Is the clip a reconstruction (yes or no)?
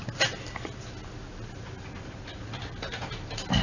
no